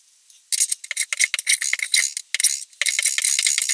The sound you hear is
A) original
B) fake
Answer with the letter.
A